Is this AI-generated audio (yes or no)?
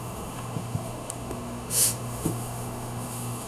yes